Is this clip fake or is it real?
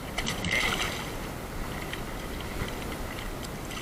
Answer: real